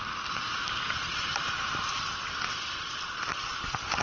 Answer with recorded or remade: recorded